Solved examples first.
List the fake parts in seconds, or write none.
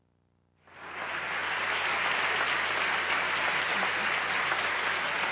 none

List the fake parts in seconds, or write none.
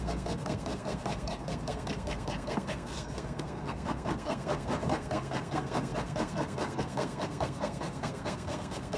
0.0-9.0 (codec, SNAC)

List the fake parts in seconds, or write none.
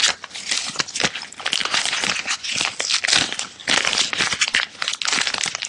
1.6-2.5 (vocoder, Vocos)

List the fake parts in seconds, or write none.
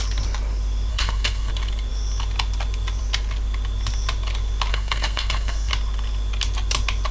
0.9-1.5 (codec, SNAC); 4.7-5.7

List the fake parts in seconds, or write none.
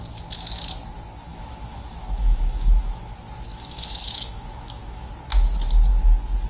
1.3-3.0 (autoencoder, DAC-VAE); 3.5-5.1